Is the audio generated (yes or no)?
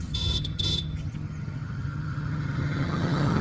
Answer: yes